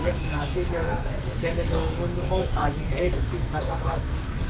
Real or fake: fake